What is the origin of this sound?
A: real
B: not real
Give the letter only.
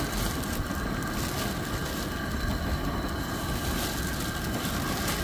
A